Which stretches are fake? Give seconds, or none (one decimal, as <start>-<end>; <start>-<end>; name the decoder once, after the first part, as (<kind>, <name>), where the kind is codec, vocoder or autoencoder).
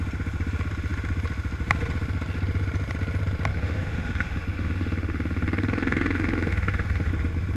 3.5-7.1 (autoencoder, DAC-VAE)